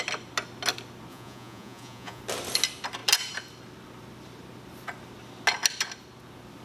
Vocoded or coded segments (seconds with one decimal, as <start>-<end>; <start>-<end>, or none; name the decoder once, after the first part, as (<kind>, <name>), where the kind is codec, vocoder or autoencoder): 1.1-2.2 (vocoder, Vocos)